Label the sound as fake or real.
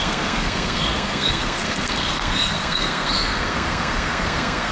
fake